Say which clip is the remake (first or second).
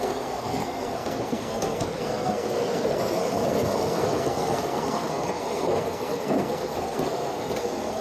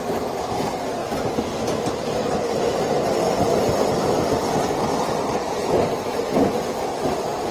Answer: first